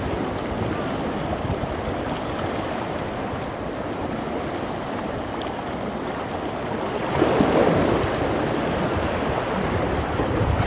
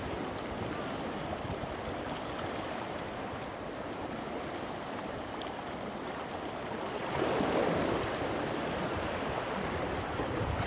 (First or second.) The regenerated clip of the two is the second